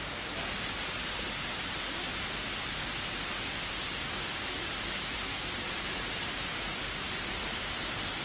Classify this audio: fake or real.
real